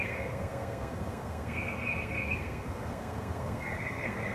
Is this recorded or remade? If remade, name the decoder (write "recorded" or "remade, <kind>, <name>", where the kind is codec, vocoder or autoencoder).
remade, codec, SNAC